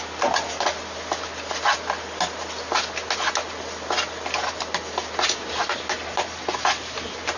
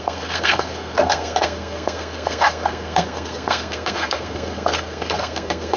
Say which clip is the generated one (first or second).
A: second